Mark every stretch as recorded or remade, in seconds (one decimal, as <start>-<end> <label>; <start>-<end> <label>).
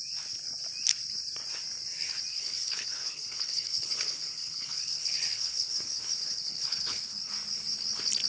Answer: 0.0-2.3 recorded; 2.3-7.3 remade; 7.3-8.3 recorded